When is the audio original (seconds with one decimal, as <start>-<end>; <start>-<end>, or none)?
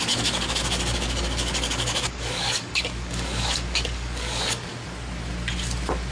4.7-6.1